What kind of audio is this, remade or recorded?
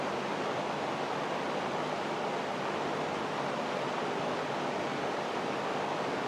recorded